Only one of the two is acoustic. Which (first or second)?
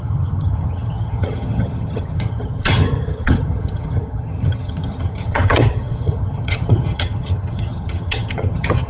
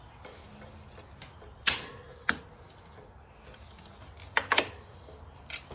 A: second